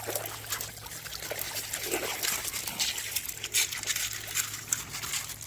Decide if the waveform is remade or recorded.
recorded